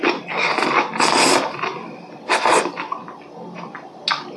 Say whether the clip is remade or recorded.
recorded